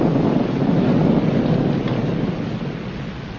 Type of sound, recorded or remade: recorded